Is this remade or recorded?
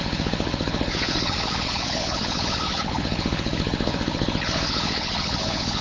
remade